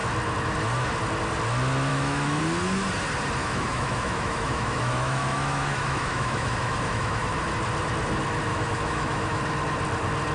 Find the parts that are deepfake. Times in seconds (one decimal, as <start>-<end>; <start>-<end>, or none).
1.9-2.4; 3.4-7.4; 8.5-9.4